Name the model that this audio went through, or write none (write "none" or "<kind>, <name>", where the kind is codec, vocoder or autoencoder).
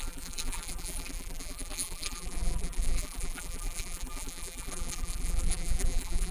vocoder, BigVGAN v2